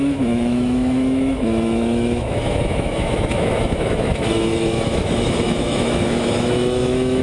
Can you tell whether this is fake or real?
fake